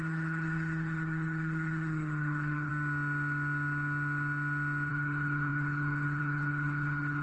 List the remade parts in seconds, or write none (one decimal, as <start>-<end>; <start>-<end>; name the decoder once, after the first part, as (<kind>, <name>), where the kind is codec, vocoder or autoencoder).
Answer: 0.0-2.7 (codec, HILCodec); 4.9-7.2